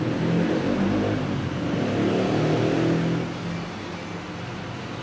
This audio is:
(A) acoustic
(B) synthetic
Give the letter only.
A